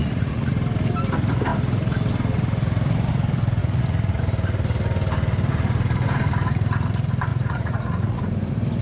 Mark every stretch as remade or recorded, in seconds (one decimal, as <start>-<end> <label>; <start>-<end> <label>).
0.0-0.5 remade; 0.5-3.6 recorded; 3.6-4.2 remade; 4.2-7.3 recorded; 7.3-8.2 remade; 8.2-8.8 recorded